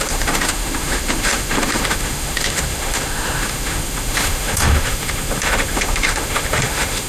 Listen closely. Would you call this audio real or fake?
fake